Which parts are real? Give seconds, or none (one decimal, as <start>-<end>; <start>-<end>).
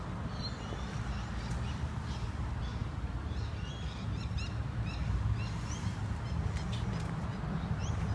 0.0-8.1